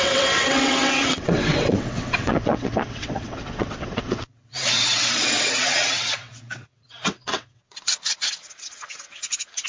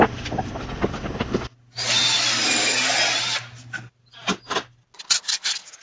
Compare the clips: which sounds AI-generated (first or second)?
first